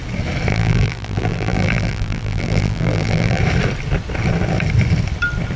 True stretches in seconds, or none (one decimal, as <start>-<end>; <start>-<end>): 0.0-0.5; 3.4-5.6